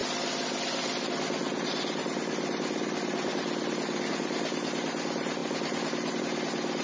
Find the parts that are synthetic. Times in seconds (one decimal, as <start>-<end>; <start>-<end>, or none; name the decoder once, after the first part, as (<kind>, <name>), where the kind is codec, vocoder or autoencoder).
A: none